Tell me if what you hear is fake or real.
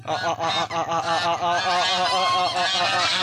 real